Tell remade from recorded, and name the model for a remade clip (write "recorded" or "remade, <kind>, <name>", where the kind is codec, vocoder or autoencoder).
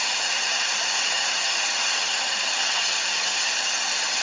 remade, vocoder, HiFi-GAN